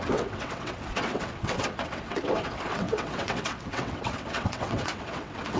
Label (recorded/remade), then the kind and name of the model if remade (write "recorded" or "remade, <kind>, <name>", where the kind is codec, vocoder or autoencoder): remade, vocoder, WaveNeXt